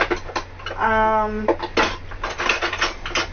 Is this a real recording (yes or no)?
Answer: yes